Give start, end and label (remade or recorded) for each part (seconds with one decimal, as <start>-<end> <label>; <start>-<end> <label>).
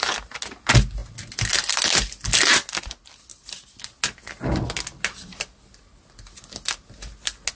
0.0-7.5 recorded